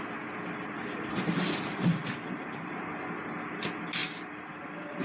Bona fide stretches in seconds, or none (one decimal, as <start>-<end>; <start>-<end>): 0.0-1.9; 2.7-4.0

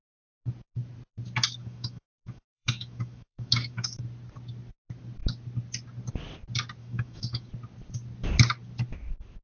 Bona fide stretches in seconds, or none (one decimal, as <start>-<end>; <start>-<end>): 0.0-1.6; 4.0-6.8; 7.5-9.4

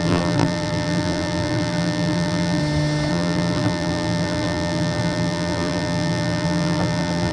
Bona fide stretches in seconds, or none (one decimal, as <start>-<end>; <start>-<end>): 2.6-3.1

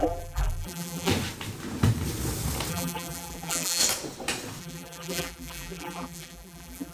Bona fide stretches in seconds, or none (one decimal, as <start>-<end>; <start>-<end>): 1.1-2.7; 3.8-4.6

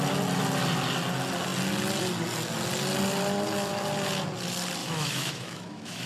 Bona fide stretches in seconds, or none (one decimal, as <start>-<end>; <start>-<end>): 0.0-4.8

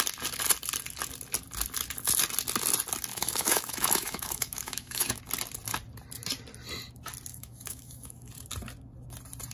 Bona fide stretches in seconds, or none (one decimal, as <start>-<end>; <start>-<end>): 0.0-3.1; 5.2-7.3; 8.3-9.5